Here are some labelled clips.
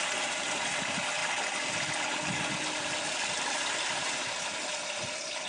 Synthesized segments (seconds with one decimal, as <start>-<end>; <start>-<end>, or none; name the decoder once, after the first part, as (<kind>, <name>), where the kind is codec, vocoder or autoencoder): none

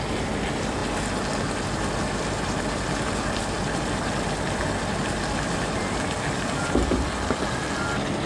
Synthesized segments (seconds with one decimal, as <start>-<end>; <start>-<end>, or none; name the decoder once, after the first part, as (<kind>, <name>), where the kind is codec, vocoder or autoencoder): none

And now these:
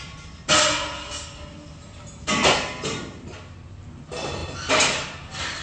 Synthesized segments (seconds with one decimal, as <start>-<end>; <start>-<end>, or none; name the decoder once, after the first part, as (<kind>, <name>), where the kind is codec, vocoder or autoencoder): none